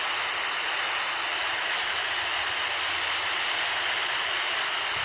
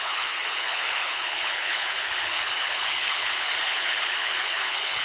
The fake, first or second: second